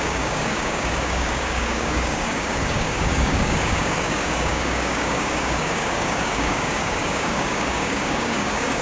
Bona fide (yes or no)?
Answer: no